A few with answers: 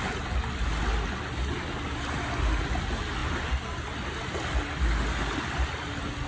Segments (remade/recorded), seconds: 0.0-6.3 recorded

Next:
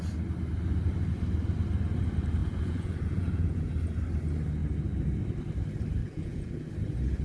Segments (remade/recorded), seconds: 0.0-2.4 recorded; 2.4-3.7 remade; 3.7-6.0 recorded; 6.0-6.7 remade; 6.7-7.2 recorded

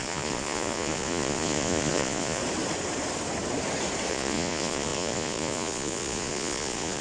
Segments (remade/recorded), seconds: 0.0-2.4 remade; 2.4-4.1 recorded; 4.1-7.0 remade